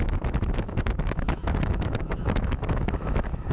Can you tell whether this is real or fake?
fake